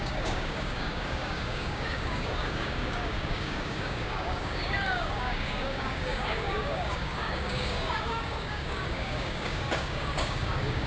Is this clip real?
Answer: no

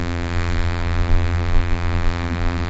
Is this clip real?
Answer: no